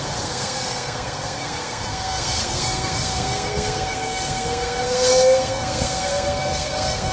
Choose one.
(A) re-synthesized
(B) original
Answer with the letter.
A